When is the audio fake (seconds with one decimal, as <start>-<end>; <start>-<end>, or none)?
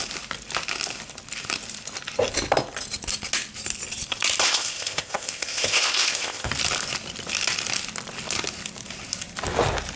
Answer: 4.4-6.5